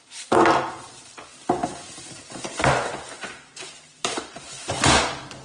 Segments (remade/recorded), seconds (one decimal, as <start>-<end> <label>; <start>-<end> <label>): 0.0-1.6 recorded; 1.6-4.8 remade; 4.8-5.4 recorded